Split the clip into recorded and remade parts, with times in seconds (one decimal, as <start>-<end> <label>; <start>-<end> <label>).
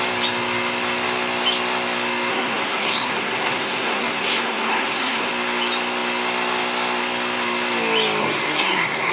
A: 0.0-2.3 recorded; 2.3-5.3 remade; 5.3-8.2 recorded; 8.2-9.1 remade